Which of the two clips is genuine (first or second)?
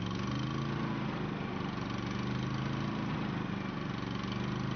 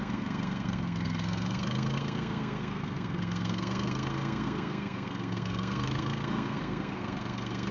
first